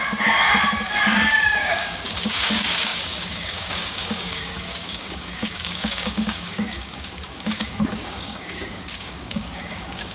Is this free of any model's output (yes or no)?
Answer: no